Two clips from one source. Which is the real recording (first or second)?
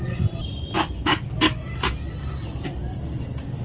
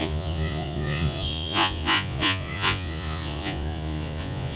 first